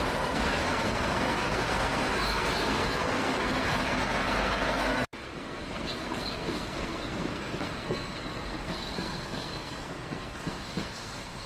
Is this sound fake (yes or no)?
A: yes